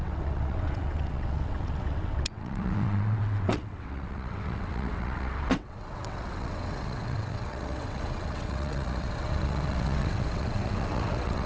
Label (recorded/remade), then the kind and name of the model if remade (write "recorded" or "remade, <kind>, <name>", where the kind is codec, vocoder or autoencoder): remade, vocoder, WaveNeXt